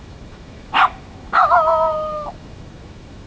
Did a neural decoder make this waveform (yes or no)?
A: yes